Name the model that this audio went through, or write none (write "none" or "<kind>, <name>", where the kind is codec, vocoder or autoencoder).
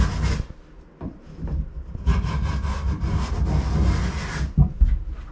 none